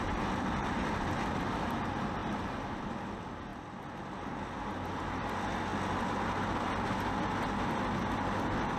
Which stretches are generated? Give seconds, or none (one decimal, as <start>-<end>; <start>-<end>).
none